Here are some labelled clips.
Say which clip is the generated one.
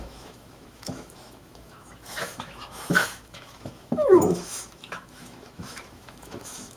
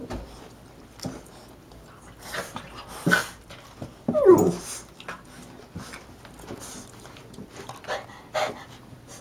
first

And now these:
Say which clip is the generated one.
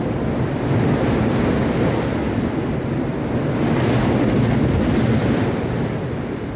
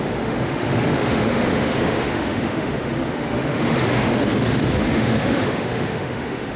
second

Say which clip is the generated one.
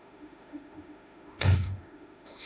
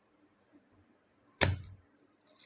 first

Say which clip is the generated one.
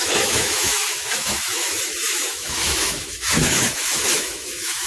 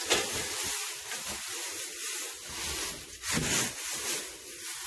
first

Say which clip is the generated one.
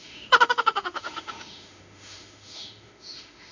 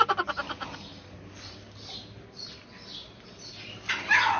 first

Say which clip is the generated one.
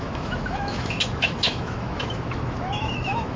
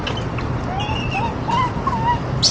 first